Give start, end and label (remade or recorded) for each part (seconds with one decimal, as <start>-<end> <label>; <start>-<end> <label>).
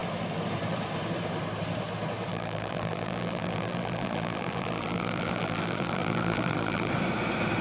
0.0-2.3 recorded; 2.3-6.9 remade; 6.9-7.6 recorded